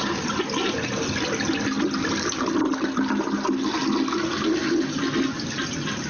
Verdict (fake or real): real